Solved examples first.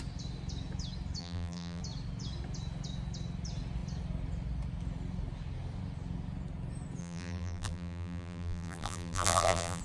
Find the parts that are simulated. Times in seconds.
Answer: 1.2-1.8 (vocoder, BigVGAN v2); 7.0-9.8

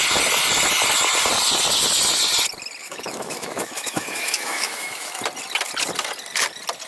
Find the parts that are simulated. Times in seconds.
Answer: 2.8-5.2 (autoencoder, DAC-VAE)

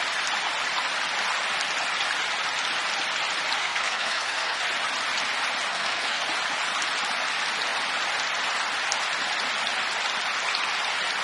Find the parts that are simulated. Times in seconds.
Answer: 3.6-4.6 (codec, SNAC); 5.7-6.2

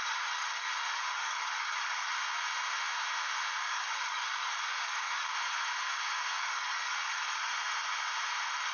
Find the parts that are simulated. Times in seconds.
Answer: 0.0-2.1 (codec, DAC); 3.5-5.3; 6.4-7.5

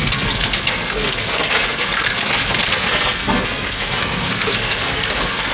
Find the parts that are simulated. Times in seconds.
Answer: 0.0-5.5 (codec, SNAC)

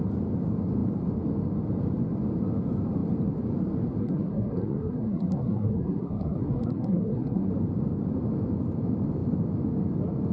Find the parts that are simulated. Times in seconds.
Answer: 4.0-7.5 (codec, SNAC)

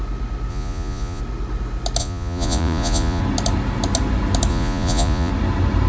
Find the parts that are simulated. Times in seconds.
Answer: 0.5-1.2 (vocoder, Vocos); 2.0-3.2; 4.5-5.3